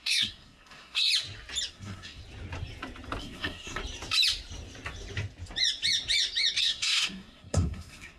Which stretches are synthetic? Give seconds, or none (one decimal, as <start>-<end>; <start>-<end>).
0.0-1.1; 1.7-2.2; 3.2-3.8; 6.6-8.2